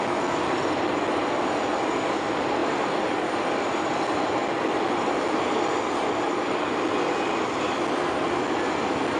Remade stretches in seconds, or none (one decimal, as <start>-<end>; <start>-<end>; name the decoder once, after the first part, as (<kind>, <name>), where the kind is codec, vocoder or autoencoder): none